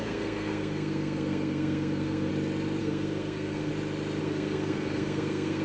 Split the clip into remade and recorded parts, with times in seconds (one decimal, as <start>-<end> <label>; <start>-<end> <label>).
0.0-2.3 remade; 2.3-2.8 recorded; 2.8-3.7 remade; 3.7-4.2 recorded; 4.2-5.6 remade